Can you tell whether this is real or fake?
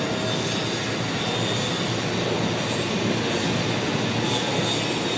real